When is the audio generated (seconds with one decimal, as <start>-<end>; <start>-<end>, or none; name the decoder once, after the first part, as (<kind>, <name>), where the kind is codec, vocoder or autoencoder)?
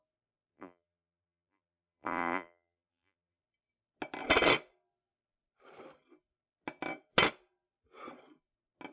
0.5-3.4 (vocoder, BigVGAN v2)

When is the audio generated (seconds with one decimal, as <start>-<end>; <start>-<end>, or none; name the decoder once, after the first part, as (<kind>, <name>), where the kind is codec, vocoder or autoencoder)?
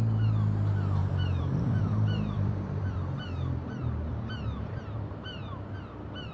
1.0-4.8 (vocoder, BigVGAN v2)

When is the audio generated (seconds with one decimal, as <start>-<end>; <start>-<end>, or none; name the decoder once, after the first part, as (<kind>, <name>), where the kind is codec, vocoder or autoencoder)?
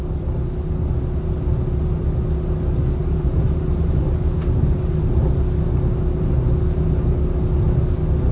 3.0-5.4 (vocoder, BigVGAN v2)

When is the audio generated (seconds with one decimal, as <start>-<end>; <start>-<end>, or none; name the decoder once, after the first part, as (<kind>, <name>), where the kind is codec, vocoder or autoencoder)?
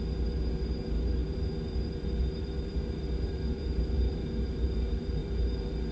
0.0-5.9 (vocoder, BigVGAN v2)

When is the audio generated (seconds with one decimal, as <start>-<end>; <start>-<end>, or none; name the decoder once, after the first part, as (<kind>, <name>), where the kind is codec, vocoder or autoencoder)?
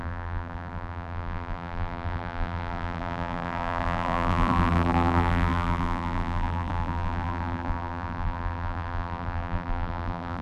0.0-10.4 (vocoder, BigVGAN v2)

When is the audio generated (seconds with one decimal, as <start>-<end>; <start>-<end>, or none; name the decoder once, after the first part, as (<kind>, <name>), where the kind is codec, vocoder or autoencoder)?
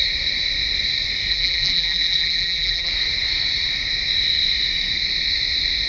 1.3-2.9 (vocoder, BigVGAN v2)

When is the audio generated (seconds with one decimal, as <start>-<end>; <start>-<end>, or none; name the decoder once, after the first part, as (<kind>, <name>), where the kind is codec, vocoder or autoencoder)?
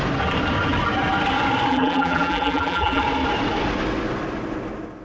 1.7-3.0 (vocoder, BigVGAN v2)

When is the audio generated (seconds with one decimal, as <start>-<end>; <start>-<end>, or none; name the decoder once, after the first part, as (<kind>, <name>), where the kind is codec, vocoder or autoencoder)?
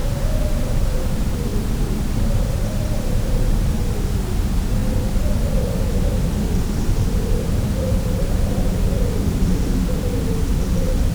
0.7-4.8 (vocoder, BigVGAN v2); 6.7-11.1